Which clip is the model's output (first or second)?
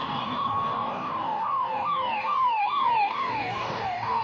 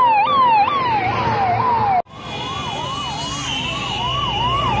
first